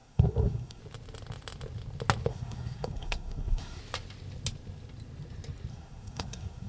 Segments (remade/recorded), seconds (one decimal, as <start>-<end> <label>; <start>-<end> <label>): 0.0-0.8 remade; 0.8-2.3 recorded; 2.3-3.8 remade; 3.8-5.7 recorded; 5.7-6.7 remade